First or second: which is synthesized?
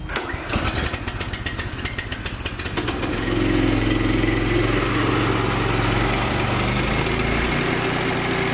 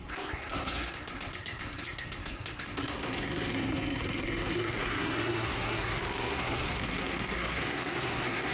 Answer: second